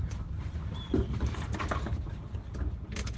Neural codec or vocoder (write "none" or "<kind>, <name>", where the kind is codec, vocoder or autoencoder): none